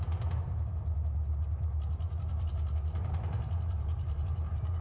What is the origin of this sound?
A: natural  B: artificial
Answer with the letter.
A